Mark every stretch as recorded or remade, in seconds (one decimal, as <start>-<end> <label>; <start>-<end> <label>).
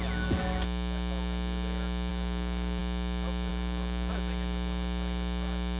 0.0-2.1 recorded; 2.1-2.8 remade; 2.8-3.5 recorded; 3.5-4.1 remade; 4.1-5.8 recorded